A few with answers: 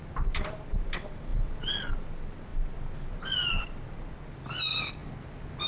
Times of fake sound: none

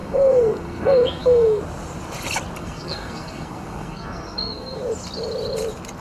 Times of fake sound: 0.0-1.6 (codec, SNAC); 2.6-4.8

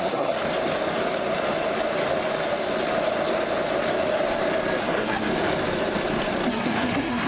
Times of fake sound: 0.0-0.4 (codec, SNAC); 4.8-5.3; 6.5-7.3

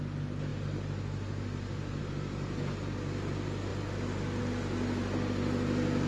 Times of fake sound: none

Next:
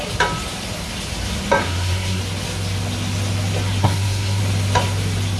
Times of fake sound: 1.6-2.2 (codec, SNAC); 3.8-4.4

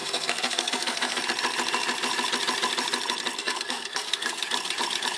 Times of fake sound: 0.0-1.2 (codec, SNAC); 3.4-4.4